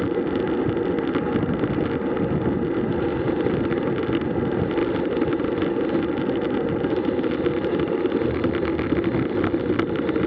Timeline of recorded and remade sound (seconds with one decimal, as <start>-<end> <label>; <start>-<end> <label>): 0.0-10.3 recorded